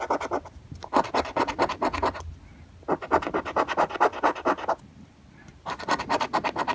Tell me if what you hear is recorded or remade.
recorded